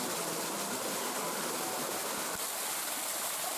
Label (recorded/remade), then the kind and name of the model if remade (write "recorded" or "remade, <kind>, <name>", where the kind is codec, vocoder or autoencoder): remade, vocoder, BigVGAN v2